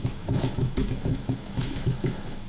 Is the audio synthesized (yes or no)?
yes